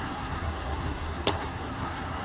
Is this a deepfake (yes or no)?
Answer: yes